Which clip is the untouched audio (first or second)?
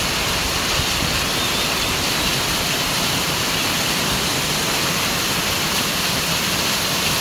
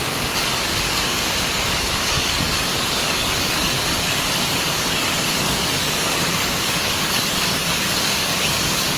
first